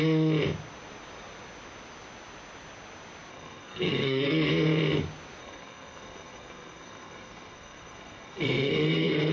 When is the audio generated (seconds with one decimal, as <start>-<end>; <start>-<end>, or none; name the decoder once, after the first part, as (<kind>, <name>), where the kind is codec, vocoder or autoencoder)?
3.3-4.5 (codec, SNAC); 5.4-9.3